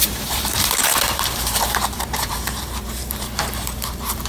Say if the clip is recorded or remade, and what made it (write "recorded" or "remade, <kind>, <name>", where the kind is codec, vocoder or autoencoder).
remade, vocoder, BigVGAN v2